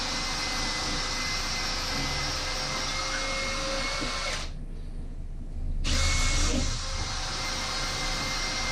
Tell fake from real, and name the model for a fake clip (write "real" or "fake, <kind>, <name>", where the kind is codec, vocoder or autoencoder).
real